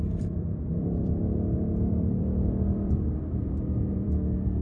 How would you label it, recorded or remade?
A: remade